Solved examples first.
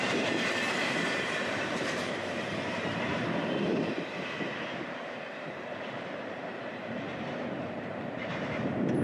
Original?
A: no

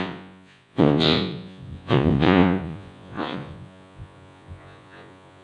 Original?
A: no